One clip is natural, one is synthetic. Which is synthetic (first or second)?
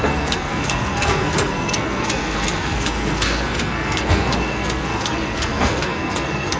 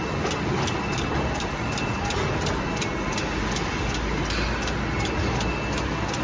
first